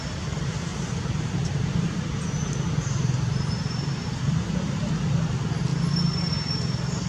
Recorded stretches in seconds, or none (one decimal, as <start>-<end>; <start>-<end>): 0.0-0.7; 4.9-7.1